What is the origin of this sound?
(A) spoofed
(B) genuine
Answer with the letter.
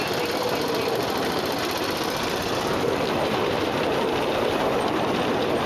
B